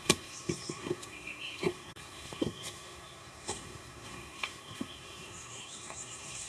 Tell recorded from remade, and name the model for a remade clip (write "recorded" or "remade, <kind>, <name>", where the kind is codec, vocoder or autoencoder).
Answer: remade, codec, SNAC